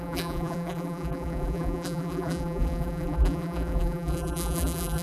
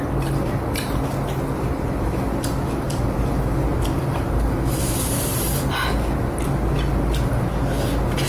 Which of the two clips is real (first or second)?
second